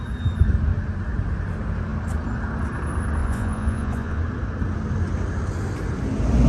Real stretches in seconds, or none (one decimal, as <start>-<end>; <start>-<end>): 0.0-3.2; 4.2-6.5